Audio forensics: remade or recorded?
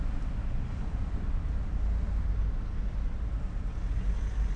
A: recorded